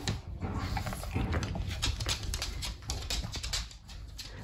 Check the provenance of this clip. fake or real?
real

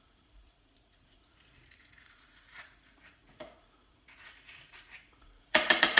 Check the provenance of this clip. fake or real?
fake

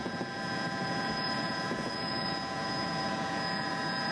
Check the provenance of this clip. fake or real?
fake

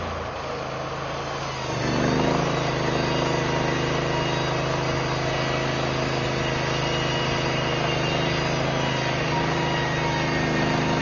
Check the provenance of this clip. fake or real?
real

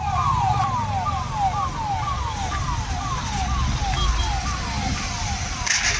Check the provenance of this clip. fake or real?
real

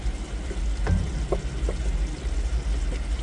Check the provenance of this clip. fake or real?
real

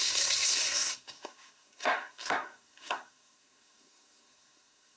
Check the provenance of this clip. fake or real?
fake